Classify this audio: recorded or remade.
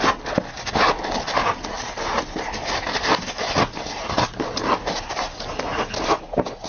recorded